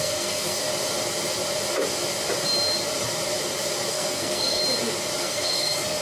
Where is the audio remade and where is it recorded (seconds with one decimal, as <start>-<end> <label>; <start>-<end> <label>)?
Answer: 0.0-0.6 remade; 0.6-3.9 recorded; 3.9-4.6 remade; 4.6-5.2 recorded; 5.2-6.0 remade

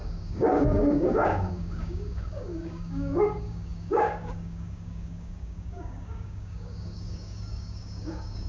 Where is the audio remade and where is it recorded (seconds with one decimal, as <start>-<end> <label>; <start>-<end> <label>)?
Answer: 0.0-8.5 remade

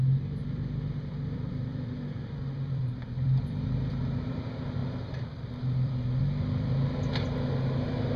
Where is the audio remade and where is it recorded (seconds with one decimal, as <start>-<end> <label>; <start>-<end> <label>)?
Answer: 0.0-0.4 recorded; 0.4-4.0 remade; 4.0-4.8 recorded; 4.8-6.2 remade; 6.2-8.2 recorded

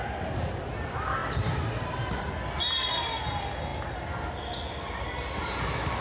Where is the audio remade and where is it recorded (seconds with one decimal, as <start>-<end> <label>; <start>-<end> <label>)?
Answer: 0.0-6.0 recorded